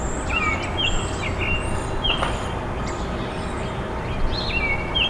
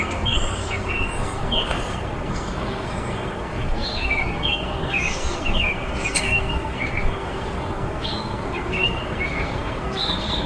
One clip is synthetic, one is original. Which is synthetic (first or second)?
second